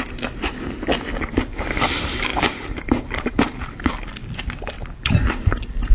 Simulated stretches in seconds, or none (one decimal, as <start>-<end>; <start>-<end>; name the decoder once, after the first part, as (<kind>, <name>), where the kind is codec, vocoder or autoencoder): none